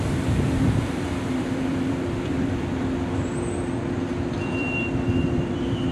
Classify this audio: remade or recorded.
remade